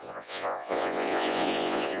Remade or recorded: remade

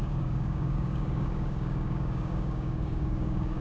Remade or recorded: remade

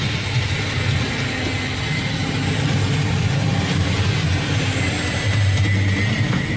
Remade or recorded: recorded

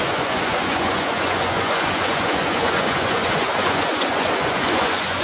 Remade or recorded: remade